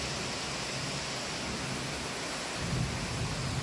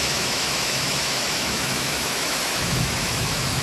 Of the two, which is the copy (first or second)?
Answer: second